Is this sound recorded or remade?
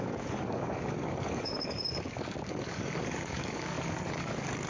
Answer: remade